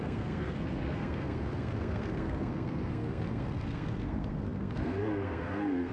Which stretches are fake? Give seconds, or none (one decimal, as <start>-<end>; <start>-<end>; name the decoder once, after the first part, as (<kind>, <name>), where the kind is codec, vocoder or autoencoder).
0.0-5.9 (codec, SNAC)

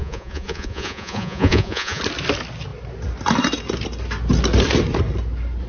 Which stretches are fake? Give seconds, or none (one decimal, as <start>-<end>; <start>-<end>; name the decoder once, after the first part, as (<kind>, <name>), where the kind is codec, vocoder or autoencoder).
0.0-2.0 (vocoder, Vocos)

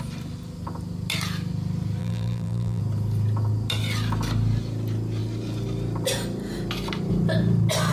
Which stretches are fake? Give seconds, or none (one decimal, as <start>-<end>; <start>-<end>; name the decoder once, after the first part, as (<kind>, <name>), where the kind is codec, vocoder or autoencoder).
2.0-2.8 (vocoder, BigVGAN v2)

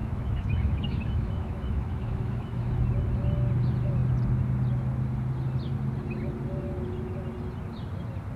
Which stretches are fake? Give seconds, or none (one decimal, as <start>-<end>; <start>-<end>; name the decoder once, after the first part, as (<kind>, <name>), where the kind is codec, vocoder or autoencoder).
0.0-2.7 (autoencoder, DAC-VAE)

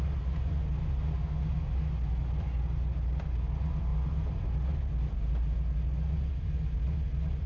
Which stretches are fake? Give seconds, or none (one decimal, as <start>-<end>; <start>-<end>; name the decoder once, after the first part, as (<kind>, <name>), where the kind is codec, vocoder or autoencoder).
none

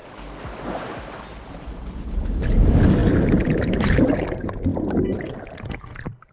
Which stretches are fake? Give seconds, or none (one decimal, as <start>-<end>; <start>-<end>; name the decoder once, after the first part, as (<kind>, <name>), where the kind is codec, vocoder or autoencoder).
1.7-4.7 (vocoder, BigVGAN v2); 5.7-6.3

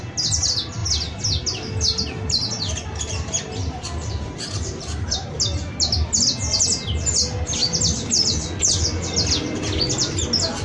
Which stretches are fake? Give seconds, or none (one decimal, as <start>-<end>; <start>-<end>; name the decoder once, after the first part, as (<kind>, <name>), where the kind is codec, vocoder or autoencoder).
3.6-5.3 (vocoder, BigVGAN v2)